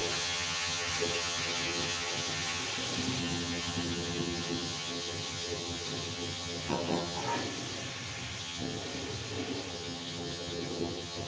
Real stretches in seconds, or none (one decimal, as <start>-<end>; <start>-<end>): 2.6-3.2; 7.2-8.4; 8.8-9.7